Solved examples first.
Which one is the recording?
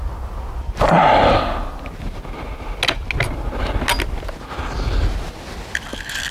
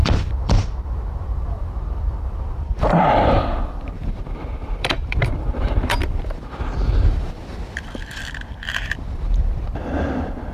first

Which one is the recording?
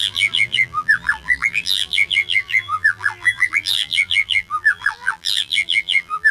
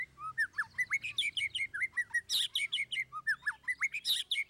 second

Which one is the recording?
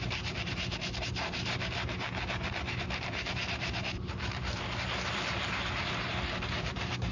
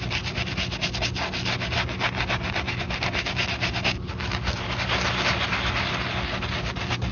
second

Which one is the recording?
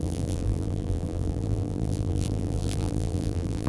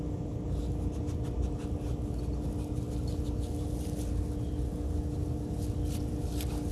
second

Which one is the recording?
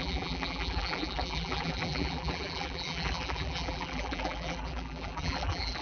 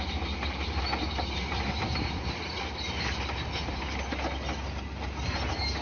second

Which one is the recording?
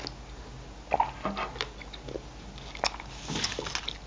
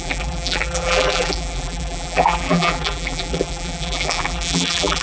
first